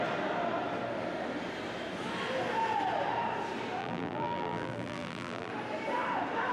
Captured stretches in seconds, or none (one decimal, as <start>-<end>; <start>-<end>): 0.0-3.8; 5.5-6.5